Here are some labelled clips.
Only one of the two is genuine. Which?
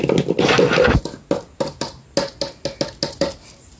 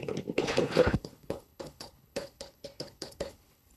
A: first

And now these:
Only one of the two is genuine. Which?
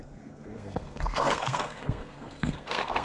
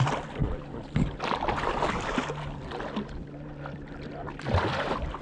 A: second